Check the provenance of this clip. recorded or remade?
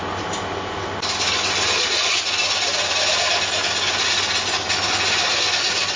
recorded